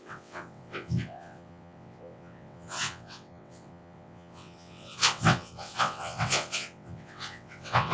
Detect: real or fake fake